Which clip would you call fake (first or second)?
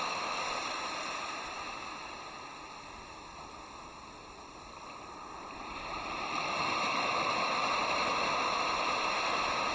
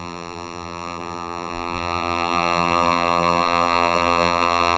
second